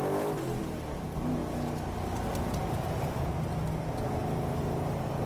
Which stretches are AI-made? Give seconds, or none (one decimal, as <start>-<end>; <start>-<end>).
none